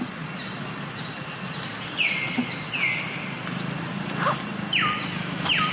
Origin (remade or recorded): recorded